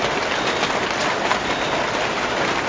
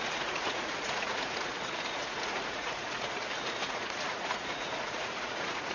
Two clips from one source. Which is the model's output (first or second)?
second